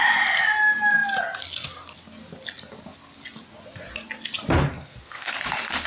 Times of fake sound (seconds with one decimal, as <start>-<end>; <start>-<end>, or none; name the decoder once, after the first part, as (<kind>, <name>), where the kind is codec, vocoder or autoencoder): 4.7-5.3 (codec, SNAC)